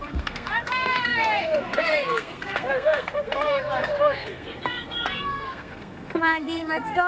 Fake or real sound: fake